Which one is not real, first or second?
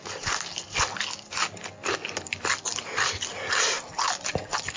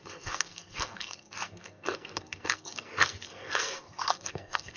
second